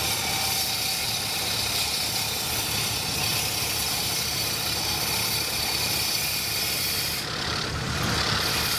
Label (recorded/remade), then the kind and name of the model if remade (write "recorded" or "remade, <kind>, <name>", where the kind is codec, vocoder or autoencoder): remade, vocoder, BigVGAN v2